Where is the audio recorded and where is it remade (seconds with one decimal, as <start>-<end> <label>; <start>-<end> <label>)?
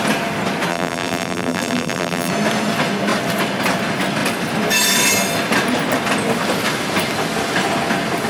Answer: 0.0-0.7 recorded; 0.7-2.3 remade; 2.3-8.3 recorded